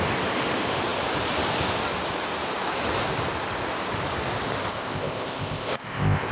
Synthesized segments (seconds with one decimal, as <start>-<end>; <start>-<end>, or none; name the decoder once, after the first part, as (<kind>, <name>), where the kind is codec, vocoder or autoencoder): 4.7-6.3 (codec, ZipCodec)